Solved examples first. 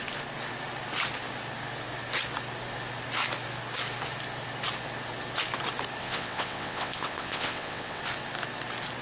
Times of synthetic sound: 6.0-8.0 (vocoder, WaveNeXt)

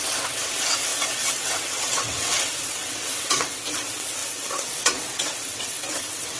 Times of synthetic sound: 0.0-6.4 (vocoder, WaveNeXt)

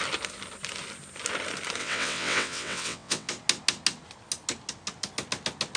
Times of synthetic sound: 1.8-3.3 (vocoder, WaveNeXt)

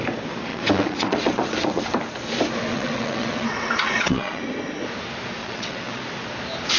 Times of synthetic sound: 0.5-2.0 (vocoder, WaveNeXt); 2.7-4.4; 5.4-6.0

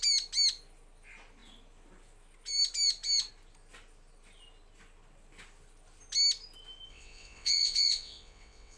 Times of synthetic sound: 6.9-8.8 (vocoder, WaveNeXt)

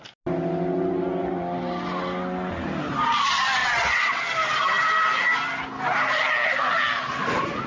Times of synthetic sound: 3.6-4.2 (vocoder, WaveNeXt)